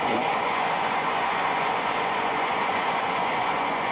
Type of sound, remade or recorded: remade